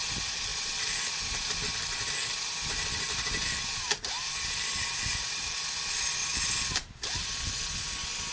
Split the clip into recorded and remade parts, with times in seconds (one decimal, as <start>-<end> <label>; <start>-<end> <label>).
0.0-0.5 recorded; 0.5-5.5 remade; 5.5-6.2 recorded; 6.2-7.2 remade; 7.2-8.3 recorded